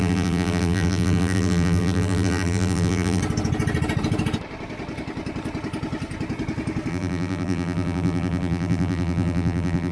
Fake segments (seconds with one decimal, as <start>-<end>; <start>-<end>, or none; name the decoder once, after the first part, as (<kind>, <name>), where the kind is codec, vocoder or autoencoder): 0.0-3.2 (vocoder, BigVGAN v2); 6.9-9.9

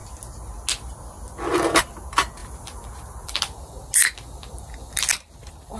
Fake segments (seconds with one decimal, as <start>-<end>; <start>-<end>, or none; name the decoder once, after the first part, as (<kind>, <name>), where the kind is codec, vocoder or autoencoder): 2.4-3.4 (vocoder, BigVGAN v2)

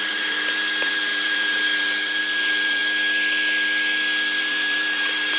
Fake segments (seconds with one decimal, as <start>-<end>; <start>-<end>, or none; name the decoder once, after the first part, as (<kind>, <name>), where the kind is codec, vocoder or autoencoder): 0.0-2.8 (vocoder, BigVGAN v2); 4.4-5.4

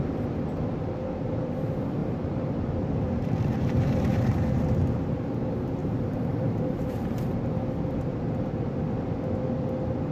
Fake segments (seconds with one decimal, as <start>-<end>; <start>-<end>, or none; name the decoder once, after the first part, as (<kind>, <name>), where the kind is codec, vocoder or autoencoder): 2.0-5.0 (vocoder, BigVGAN v2); 5.8-7.4

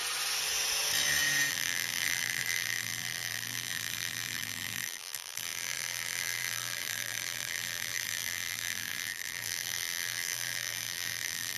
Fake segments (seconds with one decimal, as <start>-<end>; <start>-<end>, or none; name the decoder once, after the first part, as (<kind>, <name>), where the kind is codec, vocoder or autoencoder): 1.5-11.6 (vocoder, BigVGAN v2)

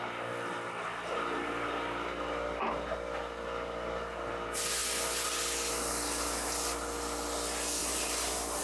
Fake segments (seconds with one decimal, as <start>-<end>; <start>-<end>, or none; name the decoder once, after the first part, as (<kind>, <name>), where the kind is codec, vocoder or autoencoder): 7.8-8.6 (vocoder, BigVGAN v2)

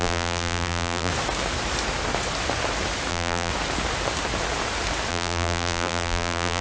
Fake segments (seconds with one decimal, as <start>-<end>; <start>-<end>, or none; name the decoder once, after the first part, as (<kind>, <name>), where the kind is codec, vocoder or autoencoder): 0.0-1.1 (vocoder, BigVGAN v2); 3.1-3.5; 5.1-6.6

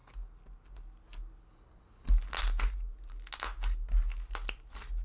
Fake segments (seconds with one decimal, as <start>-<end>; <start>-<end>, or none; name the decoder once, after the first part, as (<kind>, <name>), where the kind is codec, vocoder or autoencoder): 1.5-2.1 (vocoder, BigVGAN v2)